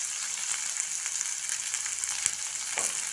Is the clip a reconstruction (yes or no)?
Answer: no